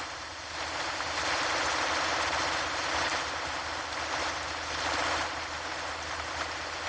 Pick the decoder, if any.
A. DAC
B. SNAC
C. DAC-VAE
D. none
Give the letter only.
D